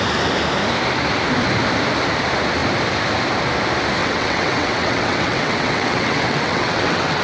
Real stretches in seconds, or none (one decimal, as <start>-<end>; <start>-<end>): 0.0-4.0